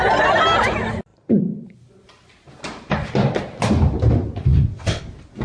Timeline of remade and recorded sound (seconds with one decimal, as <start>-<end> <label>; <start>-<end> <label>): 0.0-4.4 recorded; 4.4-5.0 remade; 5.0-5.4 recorded